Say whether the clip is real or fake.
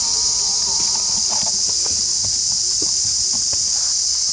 real